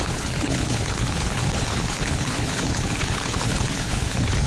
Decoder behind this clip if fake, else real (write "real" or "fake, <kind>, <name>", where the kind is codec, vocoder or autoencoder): fake, codec, HILCodec